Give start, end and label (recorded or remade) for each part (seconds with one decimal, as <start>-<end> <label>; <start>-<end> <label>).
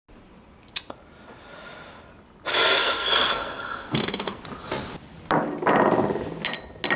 0.0-2.5 recorded; 2.5-4.4 remade; 4.4-7.0 recorded